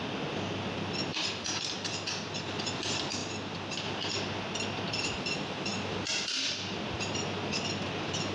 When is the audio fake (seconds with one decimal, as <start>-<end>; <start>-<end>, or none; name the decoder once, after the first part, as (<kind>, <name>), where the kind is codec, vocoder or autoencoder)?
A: 1.1-1.9 (vocoder, BigVGAN v2); 5.7-8.3